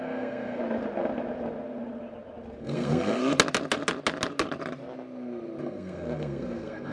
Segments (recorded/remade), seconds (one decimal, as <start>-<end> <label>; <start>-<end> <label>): 0.0-0.6 remade; 0.6-2.6 recorded; 2.6-3.2 remade; 3.2-5.6 recorded; 5.6-6.9 remade